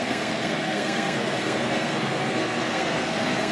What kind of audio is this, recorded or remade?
remade